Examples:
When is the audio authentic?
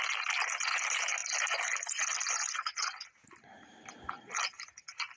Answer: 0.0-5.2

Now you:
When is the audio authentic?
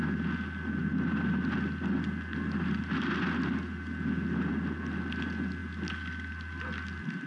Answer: 0.0-7.3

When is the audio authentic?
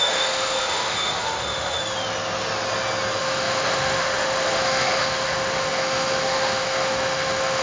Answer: 1.8-3.2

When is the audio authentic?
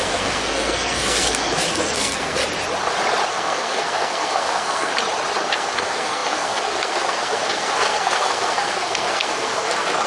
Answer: 2.4-3.3; 4.9-5.4